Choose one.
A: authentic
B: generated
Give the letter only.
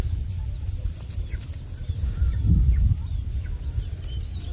A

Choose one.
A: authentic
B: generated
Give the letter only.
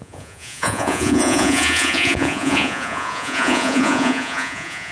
B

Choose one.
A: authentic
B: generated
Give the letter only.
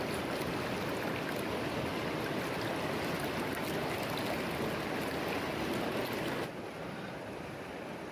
A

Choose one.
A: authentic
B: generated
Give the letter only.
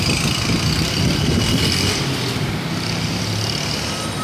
A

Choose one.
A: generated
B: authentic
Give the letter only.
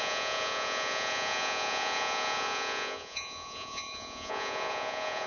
A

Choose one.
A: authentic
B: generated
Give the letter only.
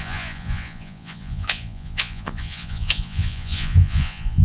B